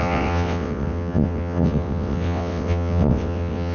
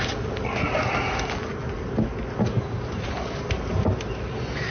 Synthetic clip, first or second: first